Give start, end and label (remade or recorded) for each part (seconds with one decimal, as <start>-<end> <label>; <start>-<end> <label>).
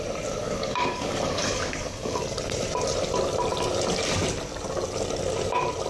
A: 0.0-0.4 recorded; 0.4-2.2 remade; 2.2-5.9 recorded